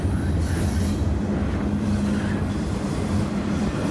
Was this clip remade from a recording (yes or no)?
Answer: no